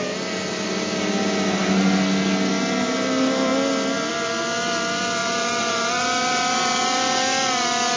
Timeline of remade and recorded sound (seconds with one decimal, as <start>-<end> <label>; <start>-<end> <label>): 0.0-5.2 recorded; 5.2-8.0 remade